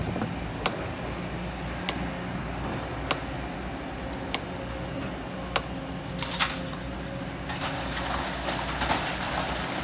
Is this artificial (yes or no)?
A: no